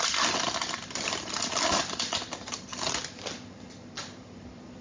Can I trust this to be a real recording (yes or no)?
yes